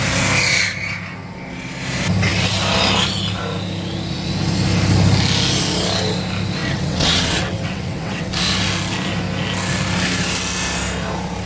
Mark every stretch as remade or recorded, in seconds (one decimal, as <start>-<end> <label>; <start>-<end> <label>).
0.0-6.6 recorded; 6.6-8.3 remade; 8.3-11.5 recorded